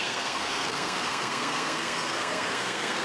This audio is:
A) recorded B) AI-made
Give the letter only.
B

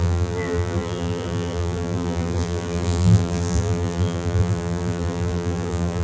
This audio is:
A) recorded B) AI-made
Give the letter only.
B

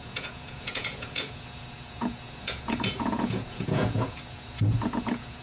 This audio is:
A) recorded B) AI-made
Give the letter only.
B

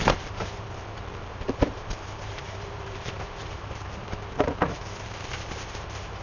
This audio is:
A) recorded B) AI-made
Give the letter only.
B